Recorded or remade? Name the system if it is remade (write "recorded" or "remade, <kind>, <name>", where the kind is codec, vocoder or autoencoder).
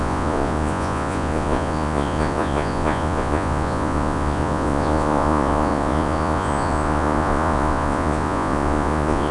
remade, vocoder, Vocos